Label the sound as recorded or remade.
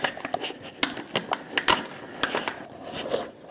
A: recorded